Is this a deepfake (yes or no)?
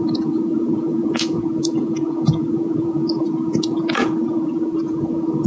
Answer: yes